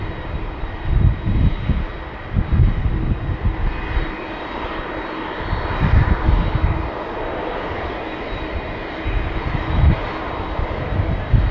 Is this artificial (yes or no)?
no